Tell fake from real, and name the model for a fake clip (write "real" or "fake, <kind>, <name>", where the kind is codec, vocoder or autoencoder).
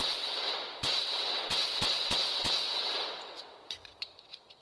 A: fake, vocoder, WaveNeXt